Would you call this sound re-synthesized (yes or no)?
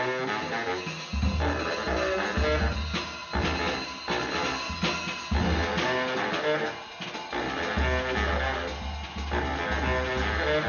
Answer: no